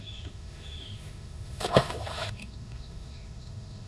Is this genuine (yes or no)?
no